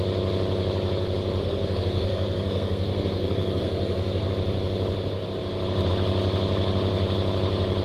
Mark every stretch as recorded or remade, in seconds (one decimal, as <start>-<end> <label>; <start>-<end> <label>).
0.0-1.4 recorded; 1.4-4.3 remade; 4.3-7.8 recorded